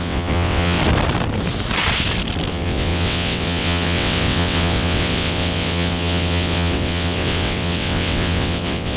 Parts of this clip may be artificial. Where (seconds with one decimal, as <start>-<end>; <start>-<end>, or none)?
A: 0.0-0.8; 2.5-9.0